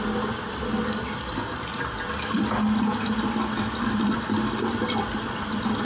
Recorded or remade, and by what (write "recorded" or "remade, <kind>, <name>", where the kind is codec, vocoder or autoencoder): recorded